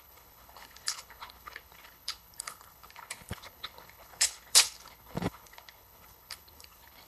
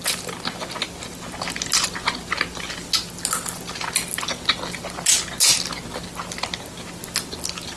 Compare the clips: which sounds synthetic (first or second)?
first